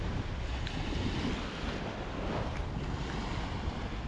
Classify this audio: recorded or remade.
recorded